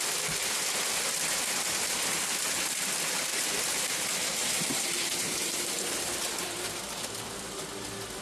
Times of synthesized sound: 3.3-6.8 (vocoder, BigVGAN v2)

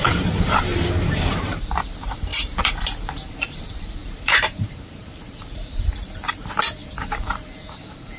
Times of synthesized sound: 0.0-0.7 (vocoder, BigVGAN v2); 1.3-8.2

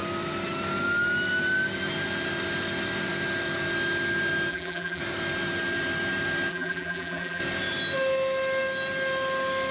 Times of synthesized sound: 4.5-5.0 (vocoder, BigVGAN v2); 6.5-7.4

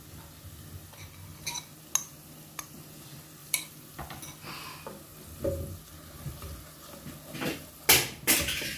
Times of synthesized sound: 3.4-4.2 (vocoder, BigVGAN v2); 5.1-5.9

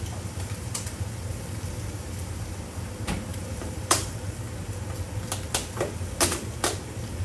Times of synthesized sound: 3.3-4.4 (vocoder, BigVGAN v2)

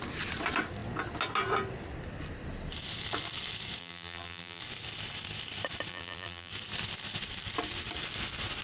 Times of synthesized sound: 3.8-4.6 (vocoder, BigVGAN v2); 5.9-6.5